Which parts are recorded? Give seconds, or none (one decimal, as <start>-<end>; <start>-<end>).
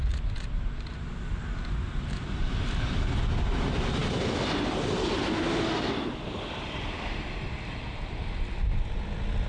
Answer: 0.0-9.5